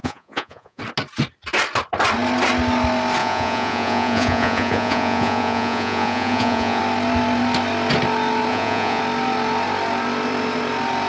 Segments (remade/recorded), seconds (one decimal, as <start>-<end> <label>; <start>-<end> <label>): 0.0-0.8 remade; 0.8-3.2 recorded; 3.2-6.8 remade; 6.8-8.5 recorded; 8.5-9.0 remade; 9.0-11.1 recorded